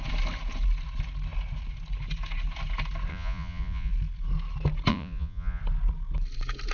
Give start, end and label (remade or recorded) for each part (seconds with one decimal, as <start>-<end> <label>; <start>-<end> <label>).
0.0-3.1 recorded; 3.1-3.9 remade; 3.9-4.9 recorded; 4.9-5.6 remade; 5.6-6.7 recorded